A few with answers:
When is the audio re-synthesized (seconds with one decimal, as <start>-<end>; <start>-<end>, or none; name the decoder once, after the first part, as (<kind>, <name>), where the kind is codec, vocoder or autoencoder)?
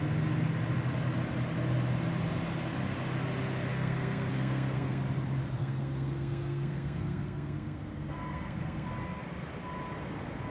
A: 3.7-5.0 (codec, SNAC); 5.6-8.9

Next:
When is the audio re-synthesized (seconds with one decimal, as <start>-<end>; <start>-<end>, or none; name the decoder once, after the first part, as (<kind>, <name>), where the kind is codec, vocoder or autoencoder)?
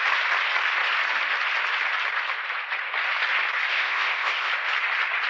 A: 3.7-4.5 (codec, ZipCodec)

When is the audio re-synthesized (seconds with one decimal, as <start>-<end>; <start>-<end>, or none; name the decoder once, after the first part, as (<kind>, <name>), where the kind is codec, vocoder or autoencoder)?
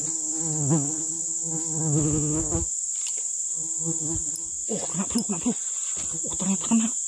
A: none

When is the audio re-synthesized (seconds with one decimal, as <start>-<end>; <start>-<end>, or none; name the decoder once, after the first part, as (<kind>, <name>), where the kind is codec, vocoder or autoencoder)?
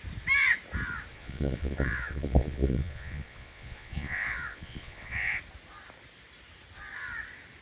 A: 1.1-5.4 (vocoder, Vocos)